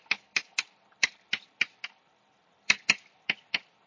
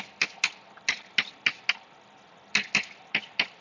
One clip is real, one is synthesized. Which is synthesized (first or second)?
first